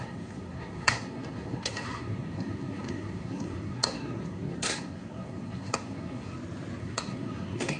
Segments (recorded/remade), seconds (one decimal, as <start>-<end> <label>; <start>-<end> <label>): 0.0-6.3 remade; 6.3-6.8 recorded; 6.8-7.8 remade